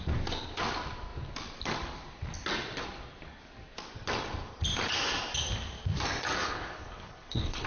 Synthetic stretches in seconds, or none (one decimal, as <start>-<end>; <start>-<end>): 6.4-7.7